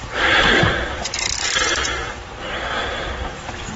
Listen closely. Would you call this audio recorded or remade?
recorded